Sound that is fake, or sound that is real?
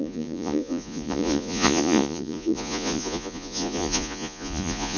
fake